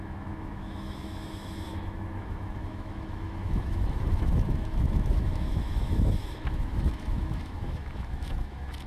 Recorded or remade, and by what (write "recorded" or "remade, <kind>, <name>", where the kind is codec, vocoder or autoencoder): remade, autoencoder, DAC-VAE